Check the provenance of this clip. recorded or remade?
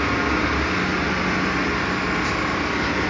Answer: recorded